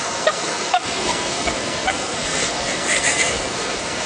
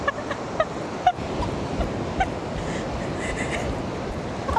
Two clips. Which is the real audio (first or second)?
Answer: second